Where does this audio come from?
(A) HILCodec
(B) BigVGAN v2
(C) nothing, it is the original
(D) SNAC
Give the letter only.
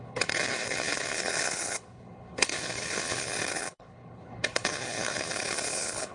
A